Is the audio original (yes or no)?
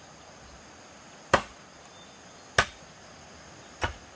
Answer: yes